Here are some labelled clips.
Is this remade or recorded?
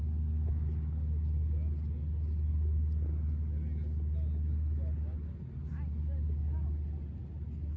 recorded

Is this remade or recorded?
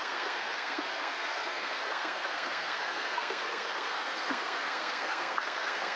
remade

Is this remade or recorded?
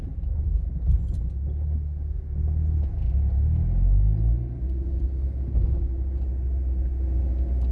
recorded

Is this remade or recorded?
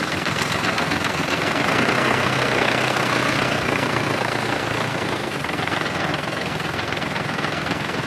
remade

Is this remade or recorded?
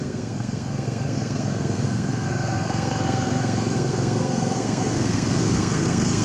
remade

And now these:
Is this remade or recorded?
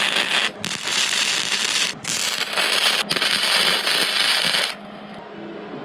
recorded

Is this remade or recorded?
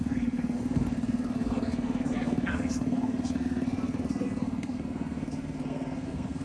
remade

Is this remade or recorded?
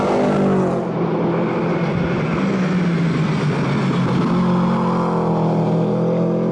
recorded